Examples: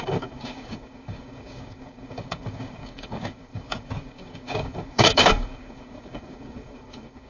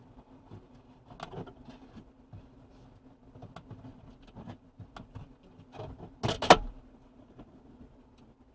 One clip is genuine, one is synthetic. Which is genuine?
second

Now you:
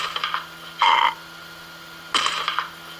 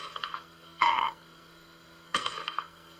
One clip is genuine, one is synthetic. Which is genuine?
first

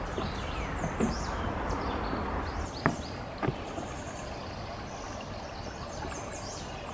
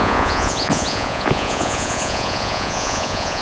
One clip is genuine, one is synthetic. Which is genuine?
first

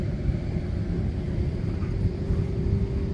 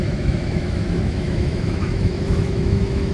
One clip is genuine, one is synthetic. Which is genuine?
first